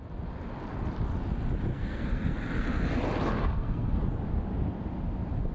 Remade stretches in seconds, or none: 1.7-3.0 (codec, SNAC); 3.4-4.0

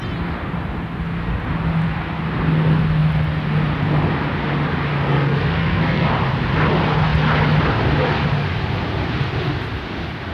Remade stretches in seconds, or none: 4.9-6.1 (codec, SNAC)